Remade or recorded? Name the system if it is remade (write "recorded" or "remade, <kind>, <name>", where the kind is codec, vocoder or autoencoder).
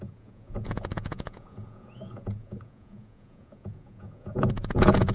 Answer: remade, vocoder, Vocos